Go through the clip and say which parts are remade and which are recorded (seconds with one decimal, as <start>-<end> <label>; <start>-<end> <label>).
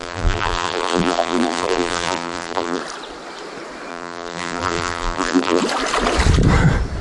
0.0-2.8 remade; 2.8-3.9 recorded; 3.9-5.6 remade; 5.6-7.0 recorded